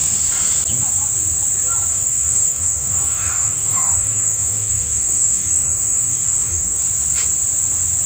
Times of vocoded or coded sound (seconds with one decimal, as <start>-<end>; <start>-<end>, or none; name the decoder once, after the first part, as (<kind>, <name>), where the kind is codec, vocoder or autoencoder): 1.9-6.8 (codec, DAC)